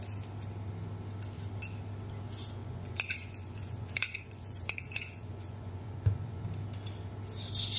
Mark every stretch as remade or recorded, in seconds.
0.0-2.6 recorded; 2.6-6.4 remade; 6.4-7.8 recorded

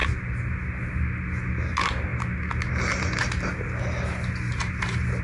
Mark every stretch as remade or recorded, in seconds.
0.0-5.2 recorded

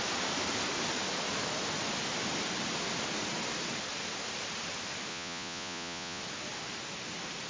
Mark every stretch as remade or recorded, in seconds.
0.0-5.1 recorded; 5.1-6.2 remade; 6.2-7.5 recorded